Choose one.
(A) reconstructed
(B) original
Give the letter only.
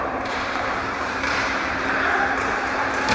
A